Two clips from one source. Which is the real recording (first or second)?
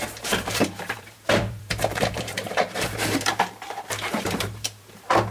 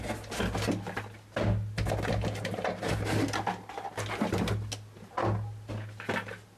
second